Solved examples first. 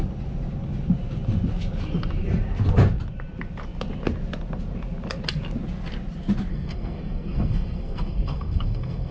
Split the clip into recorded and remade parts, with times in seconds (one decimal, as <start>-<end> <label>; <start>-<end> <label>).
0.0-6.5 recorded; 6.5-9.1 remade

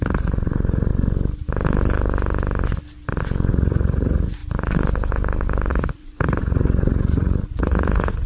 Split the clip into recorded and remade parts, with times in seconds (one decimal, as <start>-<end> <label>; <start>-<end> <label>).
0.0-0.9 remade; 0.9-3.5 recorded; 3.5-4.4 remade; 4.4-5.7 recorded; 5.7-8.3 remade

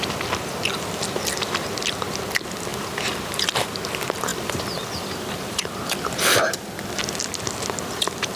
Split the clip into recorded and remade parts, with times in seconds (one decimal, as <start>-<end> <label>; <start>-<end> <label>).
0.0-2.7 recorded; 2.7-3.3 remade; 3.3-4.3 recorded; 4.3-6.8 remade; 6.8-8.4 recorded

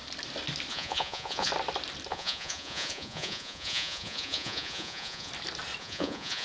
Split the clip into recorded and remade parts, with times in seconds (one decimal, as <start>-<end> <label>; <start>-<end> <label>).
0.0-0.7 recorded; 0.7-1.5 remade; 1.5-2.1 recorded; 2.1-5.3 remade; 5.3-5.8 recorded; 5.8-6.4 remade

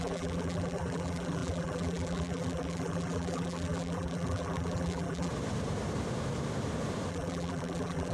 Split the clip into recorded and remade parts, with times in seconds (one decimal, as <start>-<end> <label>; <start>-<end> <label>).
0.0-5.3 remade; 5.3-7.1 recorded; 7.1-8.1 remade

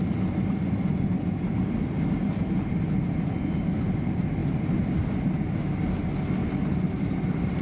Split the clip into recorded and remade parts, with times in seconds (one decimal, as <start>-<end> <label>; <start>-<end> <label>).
0.0-7.6 recorded

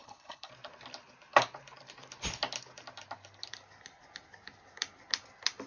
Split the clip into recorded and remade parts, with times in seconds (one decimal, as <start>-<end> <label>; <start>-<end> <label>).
0.0-0.5 remade; 0.5-5.7 recorded

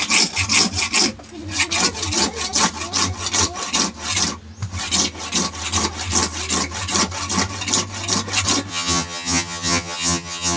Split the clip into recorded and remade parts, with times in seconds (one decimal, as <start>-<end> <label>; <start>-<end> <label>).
0.0-8.7 recorded; 8.7-10.6 remade